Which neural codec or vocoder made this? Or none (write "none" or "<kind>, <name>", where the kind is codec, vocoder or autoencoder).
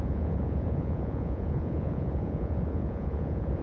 vocoder, Vocos